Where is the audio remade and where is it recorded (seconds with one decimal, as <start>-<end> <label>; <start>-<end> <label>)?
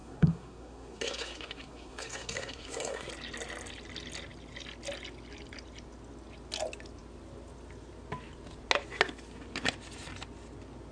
0.0-3.1 remade; 3.1-10.9 recorded